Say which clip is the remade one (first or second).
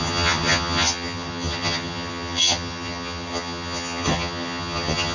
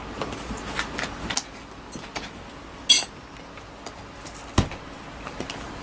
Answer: first